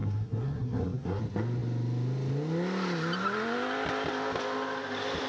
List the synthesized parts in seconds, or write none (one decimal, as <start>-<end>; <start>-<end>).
0.0-1.2